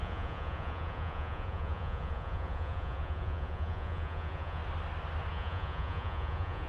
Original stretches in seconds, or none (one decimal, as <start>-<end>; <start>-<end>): 4.6-5.3